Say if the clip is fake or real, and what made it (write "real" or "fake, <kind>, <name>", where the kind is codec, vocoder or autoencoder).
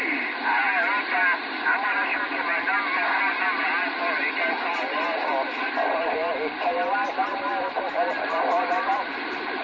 real